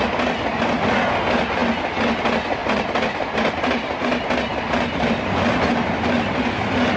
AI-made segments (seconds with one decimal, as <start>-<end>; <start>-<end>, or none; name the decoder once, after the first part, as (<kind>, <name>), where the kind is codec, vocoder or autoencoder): 2.6-4.0 (vocoder, BigVGAN v2)